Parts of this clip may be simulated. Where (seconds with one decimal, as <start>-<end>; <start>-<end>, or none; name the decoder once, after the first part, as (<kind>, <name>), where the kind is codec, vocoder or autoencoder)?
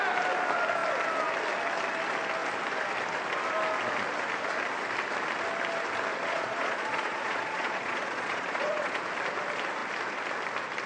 6.1-9.0 (vocoder, Vocos)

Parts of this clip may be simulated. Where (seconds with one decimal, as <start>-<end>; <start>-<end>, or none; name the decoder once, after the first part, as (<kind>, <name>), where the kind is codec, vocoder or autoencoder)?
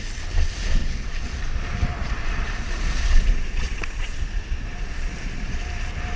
0.8-1.4 (vocoder, Vocos); 1.9-5.6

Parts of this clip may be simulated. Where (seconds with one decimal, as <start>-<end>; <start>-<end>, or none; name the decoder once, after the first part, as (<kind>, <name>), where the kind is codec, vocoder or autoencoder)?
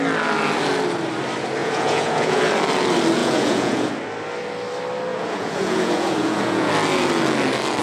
1.6-2.5 (vocoder, Vocos); 3.2-3.9; 5.1-6.7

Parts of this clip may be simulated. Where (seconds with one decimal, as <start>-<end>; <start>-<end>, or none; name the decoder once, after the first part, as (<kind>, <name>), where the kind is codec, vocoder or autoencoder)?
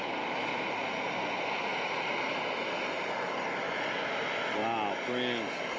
none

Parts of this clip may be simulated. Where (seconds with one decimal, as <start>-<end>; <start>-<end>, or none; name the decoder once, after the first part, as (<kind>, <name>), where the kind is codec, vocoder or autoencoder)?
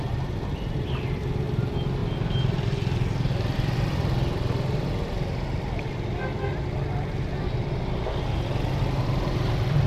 none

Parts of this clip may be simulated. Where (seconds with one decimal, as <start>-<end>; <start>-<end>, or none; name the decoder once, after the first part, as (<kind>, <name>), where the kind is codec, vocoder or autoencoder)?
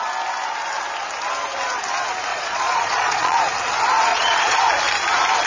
2.3-3.4 (vocoder, Vocos); 4.1-4.6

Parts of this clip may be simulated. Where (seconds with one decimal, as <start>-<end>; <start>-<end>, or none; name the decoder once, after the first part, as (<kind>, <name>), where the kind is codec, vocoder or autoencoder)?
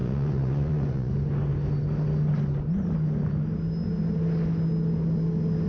0.0-1.1 (vocoder, Vocos)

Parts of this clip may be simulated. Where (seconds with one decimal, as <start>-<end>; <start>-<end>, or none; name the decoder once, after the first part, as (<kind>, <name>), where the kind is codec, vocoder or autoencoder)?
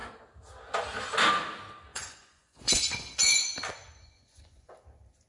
1.9-4.7 (vocoder, Vocos)